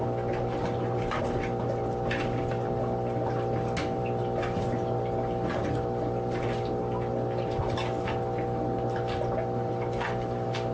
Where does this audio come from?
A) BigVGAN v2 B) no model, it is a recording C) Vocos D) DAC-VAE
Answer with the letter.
B